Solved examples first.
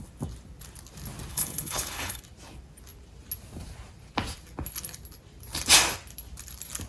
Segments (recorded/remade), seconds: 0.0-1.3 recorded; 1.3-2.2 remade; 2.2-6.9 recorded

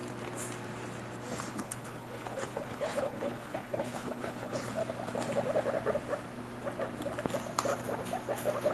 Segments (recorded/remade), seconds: 0.0-1.5 recorded; 1.5-4.8 remade; 4.8-8.7 recorded

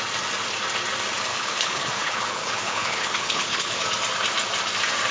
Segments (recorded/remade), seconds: 0.0-1.3 recorded; 1.3-3.8 remade; 3.8-5.1 recorded